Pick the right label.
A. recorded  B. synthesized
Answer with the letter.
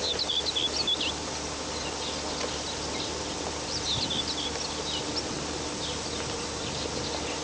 A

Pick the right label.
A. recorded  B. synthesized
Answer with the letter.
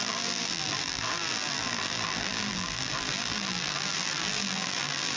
B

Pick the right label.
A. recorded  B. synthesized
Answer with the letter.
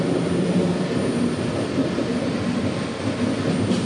A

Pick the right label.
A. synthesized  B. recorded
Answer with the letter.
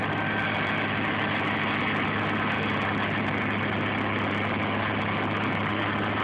B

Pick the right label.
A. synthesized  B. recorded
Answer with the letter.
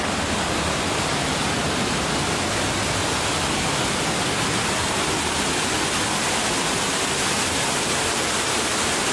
B